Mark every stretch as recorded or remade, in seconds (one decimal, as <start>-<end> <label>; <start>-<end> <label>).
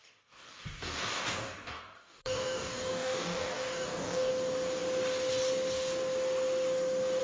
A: 0.0-4.3 remade; 4.3-7.2 recorded